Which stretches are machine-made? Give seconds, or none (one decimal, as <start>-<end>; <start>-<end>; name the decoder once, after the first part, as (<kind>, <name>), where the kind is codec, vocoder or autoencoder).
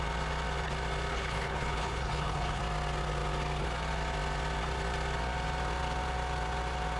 1.1-2.6 (codec, HILCodec)